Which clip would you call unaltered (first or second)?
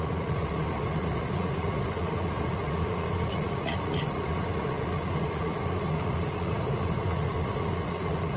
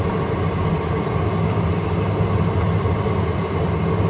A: second